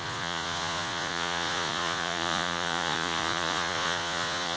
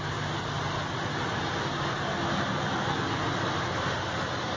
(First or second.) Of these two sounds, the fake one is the first